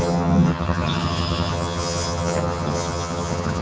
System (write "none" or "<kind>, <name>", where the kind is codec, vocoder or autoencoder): vocoder, HiFi-GAN